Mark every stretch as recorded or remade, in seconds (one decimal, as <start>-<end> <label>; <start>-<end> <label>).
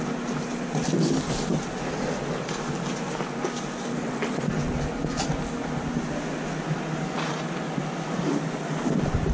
0.0-4.0 recorded; 4.0-4.7 remade; 4.7-9.3 recorded